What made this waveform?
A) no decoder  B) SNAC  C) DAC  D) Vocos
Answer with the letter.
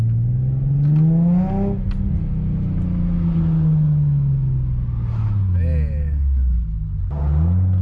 A